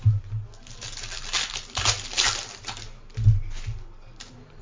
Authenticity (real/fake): real